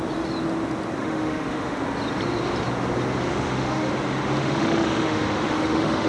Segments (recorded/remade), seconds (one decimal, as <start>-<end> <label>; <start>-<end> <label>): 0.0-1.0 recorded; 1.0-1.8 remade; 1.8-3.3 recorded; 3.3-3.9 remade; 3.9-4.4 recorded; 4.4-6.1 remade